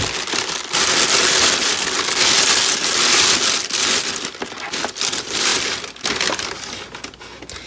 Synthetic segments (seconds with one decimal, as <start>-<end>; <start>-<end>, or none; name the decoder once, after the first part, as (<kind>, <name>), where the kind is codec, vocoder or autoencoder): none